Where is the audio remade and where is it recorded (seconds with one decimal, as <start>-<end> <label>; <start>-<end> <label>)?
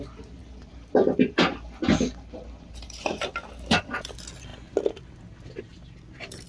0.0-6.5 recorded